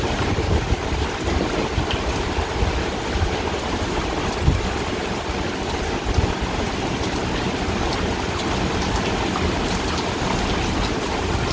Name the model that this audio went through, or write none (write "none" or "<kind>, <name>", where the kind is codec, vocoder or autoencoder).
none